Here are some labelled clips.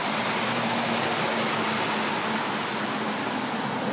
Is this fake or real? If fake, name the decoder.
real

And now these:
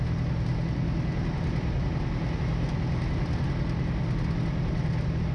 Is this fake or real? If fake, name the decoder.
real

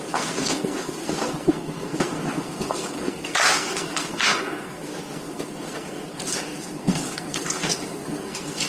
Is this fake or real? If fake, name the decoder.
fake, codec, SNAC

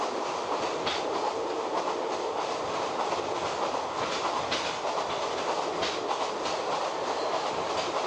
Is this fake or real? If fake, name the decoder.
real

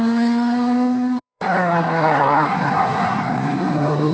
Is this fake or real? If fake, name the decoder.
fake, codec, SNAC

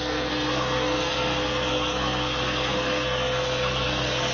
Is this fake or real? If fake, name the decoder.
fake, codec, SNAC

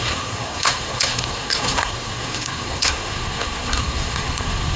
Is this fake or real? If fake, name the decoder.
fake, codec, SNAC